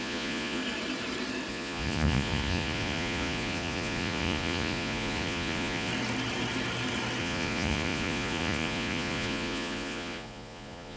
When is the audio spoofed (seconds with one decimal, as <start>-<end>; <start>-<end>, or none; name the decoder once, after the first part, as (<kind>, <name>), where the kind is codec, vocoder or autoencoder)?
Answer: 0.0-0.6 (vocoder, Vocos); 1.5-5.9; 7.2-11.0